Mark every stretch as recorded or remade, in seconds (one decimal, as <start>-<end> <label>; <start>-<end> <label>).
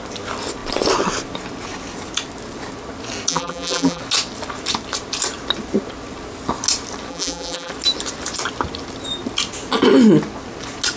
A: 0.0-3.3 recorded; 3.3-4.0 remade; 4.0-7.1 recorded; 7.1-7.7 remade; 7.7-11.0 recorded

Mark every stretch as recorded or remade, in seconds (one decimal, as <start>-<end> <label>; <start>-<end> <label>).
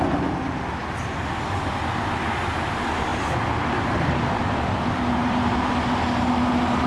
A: 0.0-5.2 recorded; 5.2-5.7 remade; 5.7-6.9 recorded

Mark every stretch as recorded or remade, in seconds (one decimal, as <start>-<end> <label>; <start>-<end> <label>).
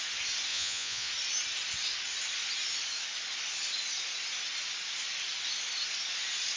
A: 0.0-0.5 recorded; 0.5-1.1 remade; 1.1-6.6 recorded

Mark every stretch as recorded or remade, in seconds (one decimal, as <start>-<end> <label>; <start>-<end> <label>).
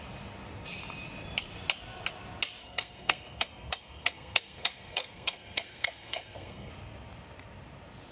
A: 0.0-2.6 recorded; 2.6-6.7 remade; 6.7-8.1 recorded